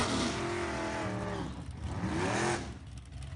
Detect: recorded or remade recorded